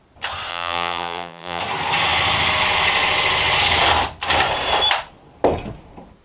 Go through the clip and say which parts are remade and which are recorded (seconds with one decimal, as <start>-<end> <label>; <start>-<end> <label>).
0.0-0.5 recorded; 0.5-1.6 remade; 1.6-6.2 recorded